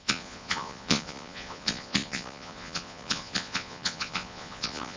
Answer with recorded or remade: remade